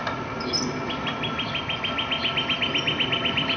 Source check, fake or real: real